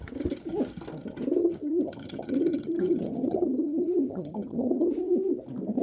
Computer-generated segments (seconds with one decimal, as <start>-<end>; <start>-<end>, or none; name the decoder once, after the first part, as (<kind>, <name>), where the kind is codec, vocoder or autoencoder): 1.4-4.9 (vocoder, HiFi-GAN)